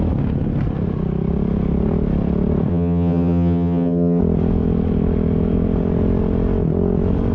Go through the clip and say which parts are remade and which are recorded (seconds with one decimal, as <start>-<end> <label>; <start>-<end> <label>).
0.0-2.7 recorded; 2.7-4.2 remade; 4.2-7.3 recorded